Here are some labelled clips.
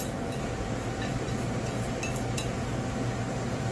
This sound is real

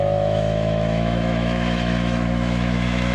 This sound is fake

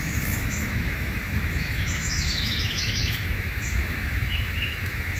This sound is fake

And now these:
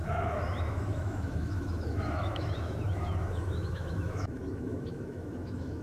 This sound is fake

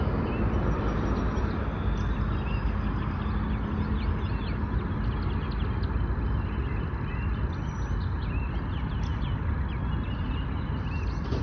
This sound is real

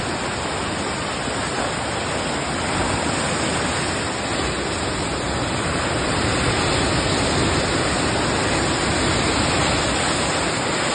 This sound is real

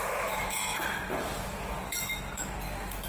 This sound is fake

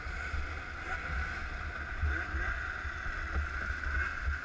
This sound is real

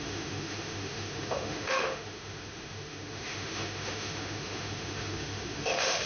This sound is fake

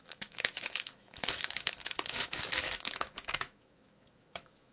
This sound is fake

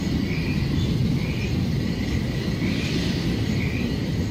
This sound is real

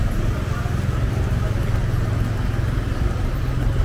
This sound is real